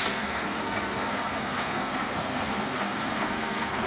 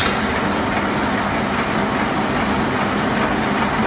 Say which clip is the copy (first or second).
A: first